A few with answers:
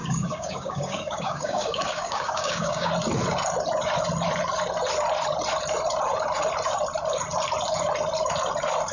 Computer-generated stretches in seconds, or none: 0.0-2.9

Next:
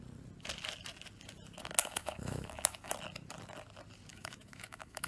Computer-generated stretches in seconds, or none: 1.8-2.9; 4.1-5.1

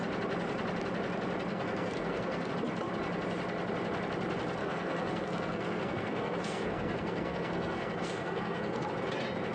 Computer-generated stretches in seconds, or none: 1.5-2.5; 4.6-8.9

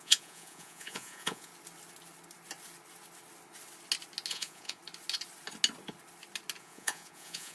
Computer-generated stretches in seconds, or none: 0.0-1.5; 4.3-4.8; 6.6-7.5

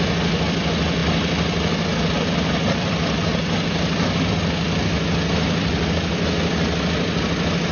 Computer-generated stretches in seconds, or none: none

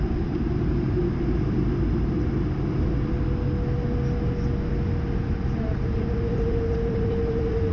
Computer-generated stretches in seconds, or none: 0.0-1.0; 5.6-7.7

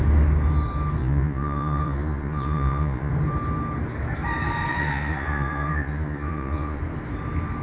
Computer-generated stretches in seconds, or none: 1.0-3.1; 4.7-6.8